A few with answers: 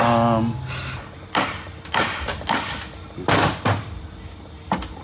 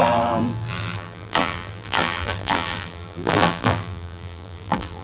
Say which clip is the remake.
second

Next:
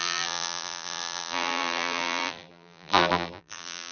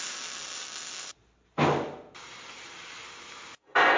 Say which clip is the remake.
first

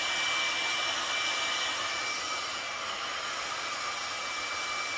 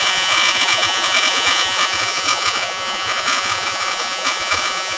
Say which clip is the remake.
second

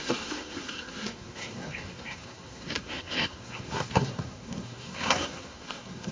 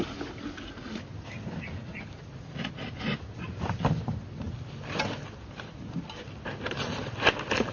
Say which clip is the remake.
first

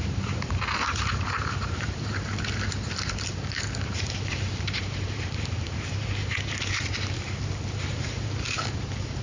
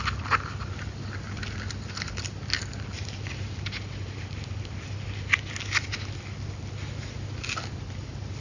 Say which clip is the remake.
first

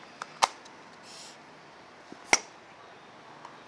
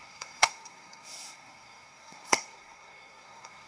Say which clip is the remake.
second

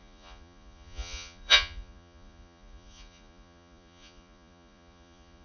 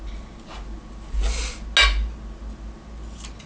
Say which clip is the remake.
first